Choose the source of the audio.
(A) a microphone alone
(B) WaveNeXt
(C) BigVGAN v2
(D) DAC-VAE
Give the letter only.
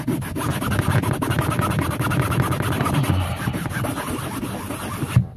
A